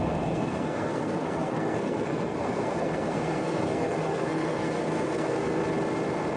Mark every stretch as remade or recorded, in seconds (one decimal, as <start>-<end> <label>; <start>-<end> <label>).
0.0-5.6 remade; 5.6-6.4 recorded